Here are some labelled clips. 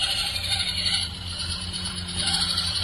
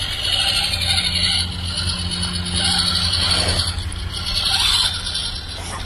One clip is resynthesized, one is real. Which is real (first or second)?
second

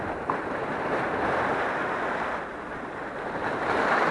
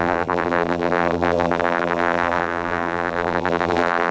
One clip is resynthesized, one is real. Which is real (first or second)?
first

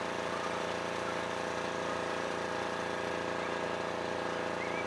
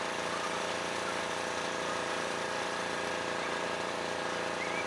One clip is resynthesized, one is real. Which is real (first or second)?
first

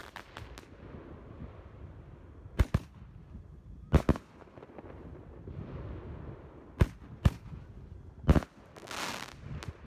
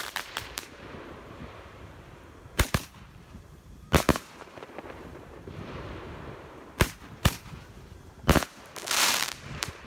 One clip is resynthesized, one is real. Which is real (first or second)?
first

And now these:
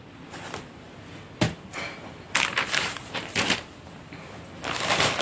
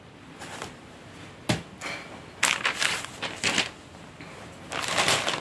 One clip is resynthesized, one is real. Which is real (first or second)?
second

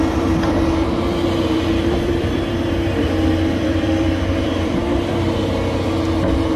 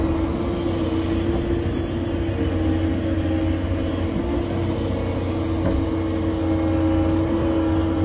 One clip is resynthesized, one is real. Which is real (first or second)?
second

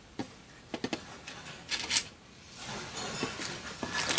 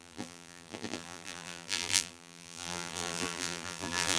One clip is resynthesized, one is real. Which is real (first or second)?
first